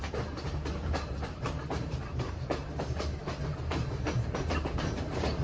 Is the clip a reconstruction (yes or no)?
yes